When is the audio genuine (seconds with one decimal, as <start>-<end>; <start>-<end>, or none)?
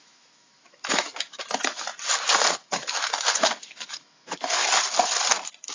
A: 1.9-2.5; 4.6-5.7